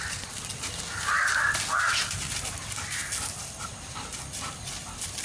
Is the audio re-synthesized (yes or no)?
no